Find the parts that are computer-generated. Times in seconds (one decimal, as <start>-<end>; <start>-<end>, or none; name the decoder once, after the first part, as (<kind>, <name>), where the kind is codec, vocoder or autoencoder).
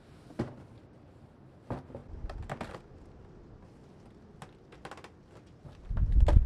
none